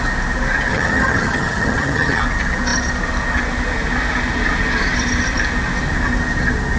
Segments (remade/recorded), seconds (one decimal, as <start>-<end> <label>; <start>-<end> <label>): 0.0-0.7 recorded; 0.7-2.2 remade; 2.2-6.8 recorded